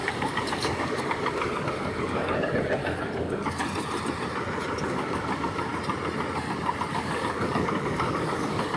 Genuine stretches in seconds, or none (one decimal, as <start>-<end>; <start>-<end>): 3.6-4.6; 5.7-6.9